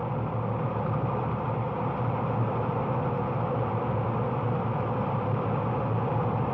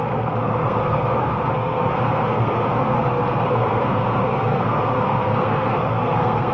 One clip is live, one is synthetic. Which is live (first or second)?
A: first